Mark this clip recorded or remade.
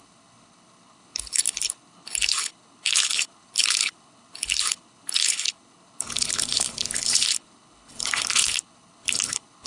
remade